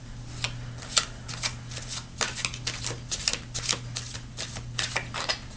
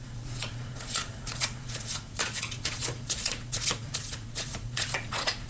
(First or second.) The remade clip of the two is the second